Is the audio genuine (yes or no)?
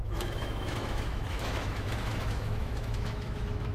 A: no